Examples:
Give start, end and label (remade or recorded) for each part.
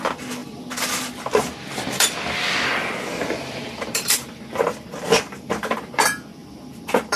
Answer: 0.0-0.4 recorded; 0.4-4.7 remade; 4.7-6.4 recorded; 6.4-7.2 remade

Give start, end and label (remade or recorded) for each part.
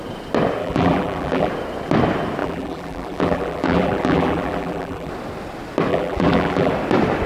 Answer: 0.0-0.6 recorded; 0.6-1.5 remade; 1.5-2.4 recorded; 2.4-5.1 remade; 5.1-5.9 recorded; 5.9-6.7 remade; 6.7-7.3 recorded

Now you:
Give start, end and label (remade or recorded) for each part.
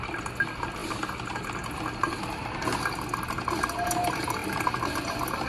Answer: 0.0-4.4 recorded; 4.4-5.5 remade